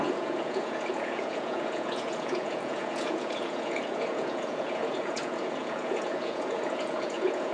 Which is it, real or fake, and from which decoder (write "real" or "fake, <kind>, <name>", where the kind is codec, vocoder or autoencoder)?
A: fake, vocoder, Vocos